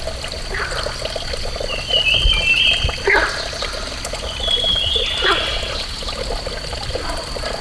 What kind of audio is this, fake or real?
real